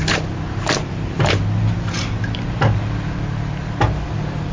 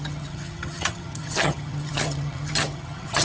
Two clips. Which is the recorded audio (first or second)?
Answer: first